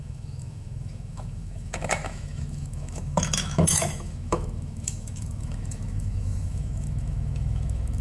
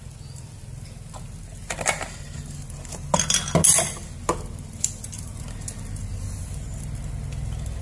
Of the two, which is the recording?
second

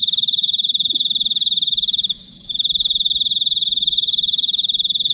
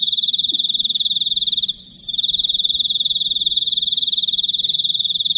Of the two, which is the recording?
second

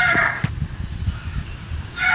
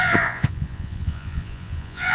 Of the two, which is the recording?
first